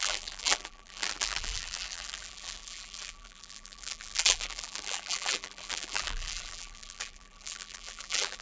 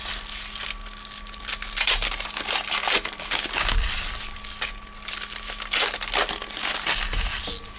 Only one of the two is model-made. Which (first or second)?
first